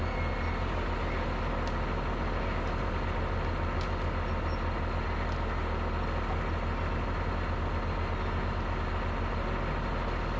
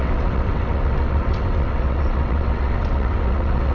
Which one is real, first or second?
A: first